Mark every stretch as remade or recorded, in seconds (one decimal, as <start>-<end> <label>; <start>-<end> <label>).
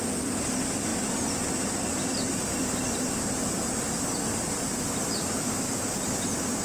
0.0-6.6 recorded